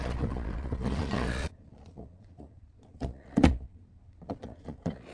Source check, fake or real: fake